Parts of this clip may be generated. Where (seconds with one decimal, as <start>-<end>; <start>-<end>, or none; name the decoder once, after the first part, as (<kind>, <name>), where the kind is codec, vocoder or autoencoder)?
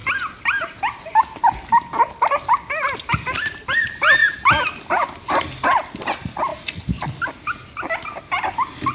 none